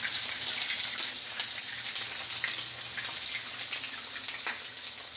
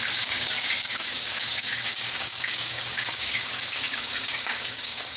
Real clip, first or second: first